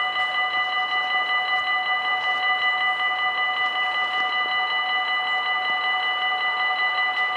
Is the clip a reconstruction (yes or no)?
no